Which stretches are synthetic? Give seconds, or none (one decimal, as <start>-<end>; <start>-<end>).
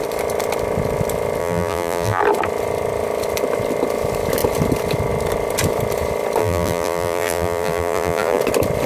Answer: 1.4-2.2; 6.4-8.4